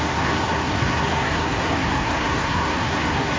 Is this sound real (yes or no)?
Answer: no